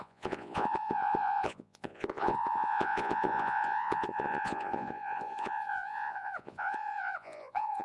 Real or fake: fake